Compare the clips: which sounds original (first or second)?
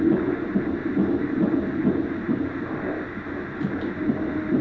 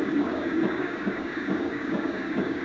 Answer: first